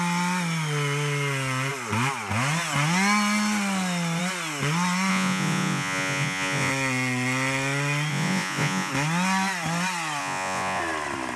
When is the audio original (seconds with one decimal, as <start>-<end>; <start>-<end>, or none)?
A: 0.0-5.1; 6.7-8.1; 8.9-10.2; 10.8-11.4